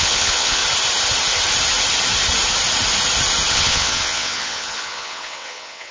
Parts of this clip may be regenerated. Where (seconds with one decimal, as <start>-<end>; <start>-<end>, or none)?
0.0-0.6; 3.5-5.9